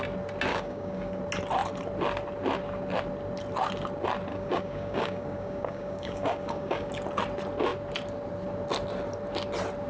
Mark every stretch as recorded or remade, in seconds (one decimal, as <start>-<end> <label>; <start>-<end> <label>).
0.0-0.5 recorded; 0.5-1.2 remade; 1.2-4.3 recorded; 4.3-6.9 remade; 6.9-9.9 recorded